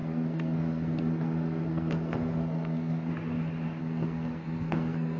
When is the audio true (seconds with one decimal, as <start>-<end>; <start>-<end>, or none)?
3.1-3.8